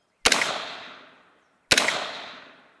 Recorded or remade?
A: recorded